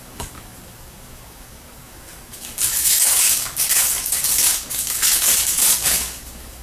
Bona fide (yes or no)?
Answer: no